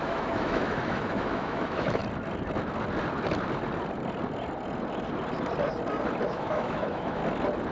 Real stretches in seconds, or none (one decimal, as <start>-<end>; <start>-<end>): 2.0-6.3; 7.2-7.7